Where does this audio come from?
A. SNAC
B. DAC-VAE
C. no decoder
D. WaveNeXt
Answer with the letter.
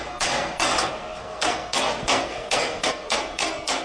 A